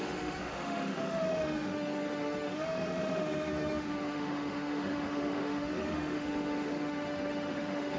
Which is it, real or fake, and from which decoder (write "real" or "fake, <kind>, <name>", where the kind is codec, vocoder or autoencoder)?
fake, autoencoder, DAC-VAE